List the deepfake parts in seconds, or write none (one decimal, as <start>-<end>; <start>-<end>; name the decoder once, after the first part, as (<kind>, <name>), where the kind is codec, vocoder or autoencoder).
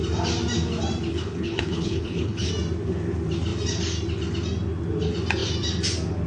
1.1-2.5 (codec, HILCodec)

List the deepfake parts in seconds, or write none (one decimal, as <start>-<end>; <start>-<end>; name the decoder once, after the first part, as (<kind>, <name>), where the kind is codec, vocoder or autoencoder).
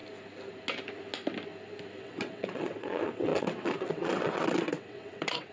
2.0-5.5 (vocoder, WaveNeXt)